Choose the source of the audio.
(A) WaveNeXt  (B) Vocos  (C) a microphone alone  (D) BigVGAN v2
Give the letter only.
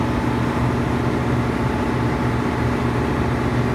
C